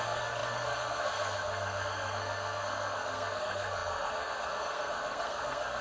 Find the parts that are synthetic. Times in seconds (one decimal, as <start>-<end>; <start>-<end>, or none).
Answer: 0.0-5.8